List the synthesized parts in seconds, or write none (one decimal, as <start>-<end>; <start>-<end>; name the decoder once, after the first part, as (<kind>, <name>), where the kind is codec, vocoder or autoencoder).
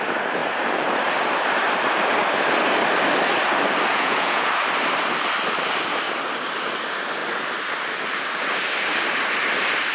3.9-4.5 (vocoder, Vocos)